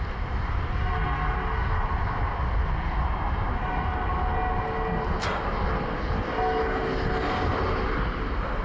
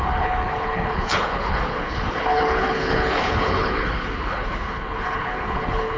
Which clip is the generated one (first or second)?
second